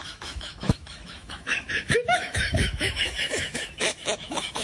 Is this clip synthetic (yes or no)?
yes